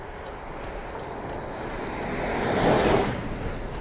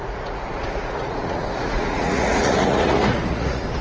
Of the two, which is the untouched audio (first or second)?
first